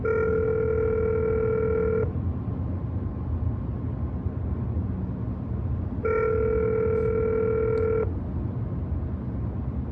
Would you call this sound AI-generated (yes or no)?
no